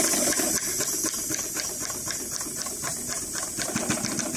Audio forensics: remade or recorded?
recorded